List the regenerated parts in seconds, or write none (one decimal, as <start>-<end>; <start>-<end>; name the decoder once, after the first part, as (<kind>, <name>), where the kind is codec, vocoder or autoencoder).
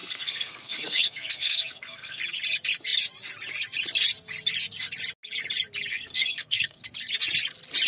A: 0.0-2.2 (codec, SNAC); 5.9-6.8